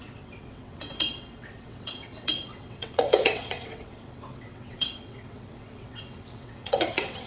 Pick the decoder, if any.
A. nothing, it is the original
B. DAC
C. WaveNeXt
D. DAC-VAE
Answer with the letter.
C